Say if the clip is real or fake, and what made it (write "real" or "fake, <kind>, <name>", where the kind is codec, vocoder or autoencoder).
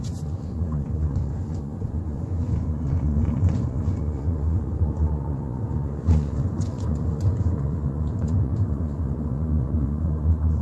fake, vocoder, Vocos